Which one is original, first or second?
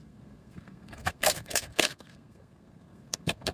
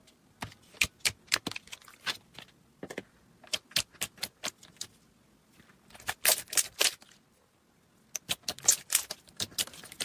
second